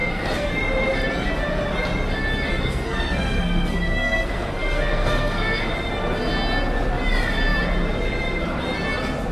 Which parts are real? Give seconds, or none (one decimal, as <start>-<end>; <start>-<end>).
0.5-2.5; 5.6-9.3